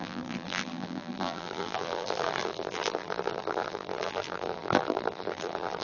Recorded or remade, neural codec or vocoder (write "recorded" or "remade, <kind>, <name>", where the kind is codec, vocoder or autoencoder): remade, vocoder, BigVGAN v2